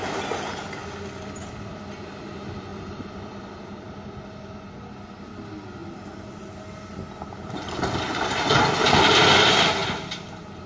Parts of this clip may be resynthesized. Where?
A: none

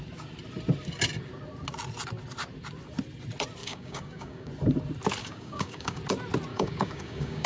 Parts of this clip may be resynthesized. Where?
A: 3.6-4.5 (codec, DAC); 5.2-6.0; 6.5-7.5